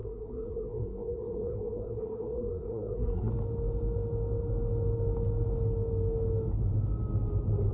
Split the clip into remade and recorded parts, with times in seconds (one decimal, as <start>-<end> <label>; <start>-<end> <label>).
0.0-3.3 remade; 3.3-7.7 recorded